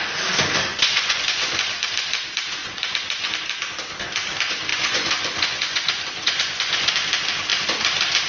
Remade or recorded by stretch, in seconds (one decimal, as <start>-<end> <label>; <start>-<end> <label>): 0.0-0.7 recorded; 0.7-1.8 remade; 1.8-2.6 recorded; 2.6-3.3 remade; 3.3-4.7 recorded; 4.7-6.9 remade; 6.9-8.3 recorded